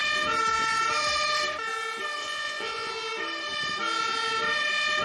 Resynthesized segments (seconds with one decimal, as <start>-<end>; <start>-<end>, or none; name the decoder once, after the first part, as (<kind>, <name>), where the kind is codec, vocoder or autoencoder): 2.2-2.9 (vocoder, Vocos)